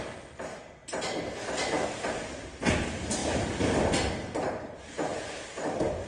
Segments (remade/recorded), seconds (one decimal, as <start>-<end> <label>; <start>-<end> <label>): 0.0-0.8 remade; 0.8-1.9 recorded; 1.9-3.2 remade; 3.2-4.1 recorded; 4.1-6.1 remade